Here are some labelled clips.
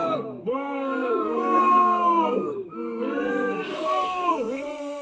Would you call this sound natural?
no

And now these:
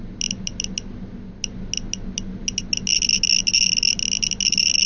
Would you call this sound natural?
yes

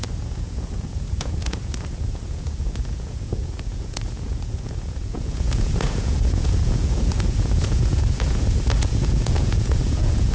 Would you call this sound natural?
no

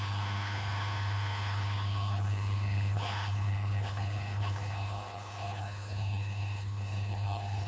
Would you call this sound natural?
no